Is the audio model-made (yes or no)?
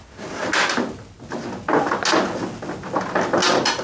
no